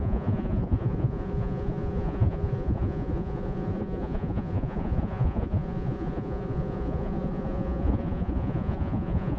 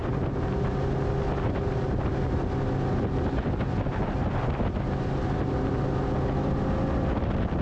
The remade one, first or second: first